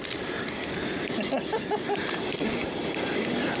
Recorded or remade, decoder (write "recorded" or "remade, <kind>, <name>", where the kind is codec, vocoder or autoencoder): recorded